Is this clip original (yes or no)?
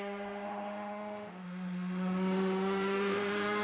no